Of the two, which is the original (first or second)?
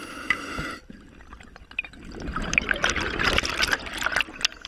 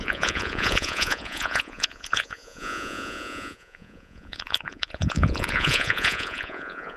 first